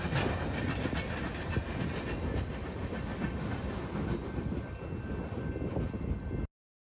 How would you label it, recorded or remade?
recorded